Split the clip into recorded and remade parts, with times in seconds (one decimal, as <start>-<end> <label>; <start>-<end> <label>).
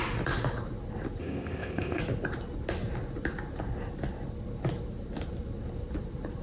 0.0-1.2 recorded; 1.2-2.0 remade; 2.0-6.4 recorded